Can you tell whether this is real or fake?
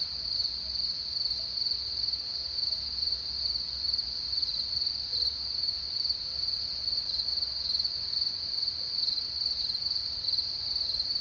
real